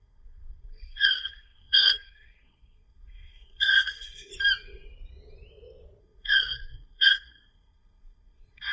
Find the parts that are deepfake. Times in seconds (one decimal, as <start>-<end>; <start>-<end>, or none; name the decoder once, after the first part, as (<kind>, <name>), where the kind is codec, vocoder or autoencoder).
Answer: 0.0-4.3 (codec, SNAC); 6.0-8.7